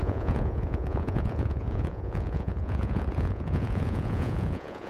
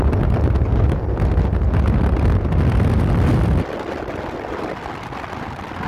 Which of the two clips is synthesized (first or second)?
first